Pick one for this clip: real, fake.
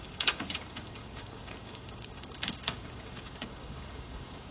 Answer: fake